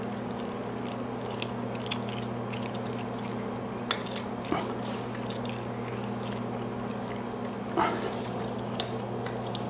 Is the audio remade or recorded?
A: recorded